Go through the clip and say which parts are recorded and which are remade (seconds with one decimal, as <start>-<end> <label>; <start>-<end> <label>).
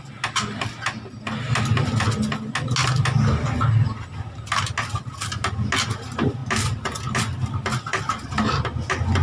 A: 0.0-9.2 recorded